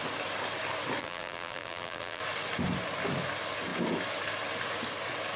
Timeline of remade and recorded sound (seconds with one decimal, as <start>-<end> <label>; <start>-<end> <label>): 0.0-1.0 recorded; 1.0-2.2 remade; 2.2-5.4 recorded